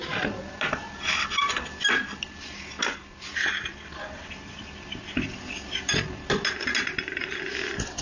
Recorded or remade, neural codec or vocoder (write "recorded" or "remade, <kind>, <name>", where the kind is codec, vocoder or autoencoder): recorded